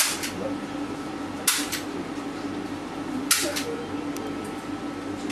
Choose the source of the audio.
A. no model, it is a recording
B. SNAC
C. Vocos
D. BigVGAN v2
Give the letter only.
A